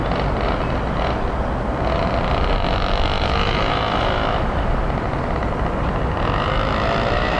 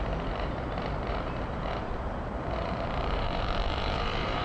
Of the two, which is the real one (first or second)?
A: first